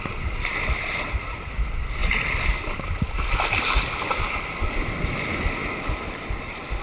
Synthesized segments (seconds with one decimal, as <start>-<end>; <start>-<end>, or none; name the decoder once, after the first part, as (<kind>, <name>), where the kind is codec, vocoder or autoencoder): none